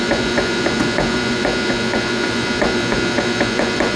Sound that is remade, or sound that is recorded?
remade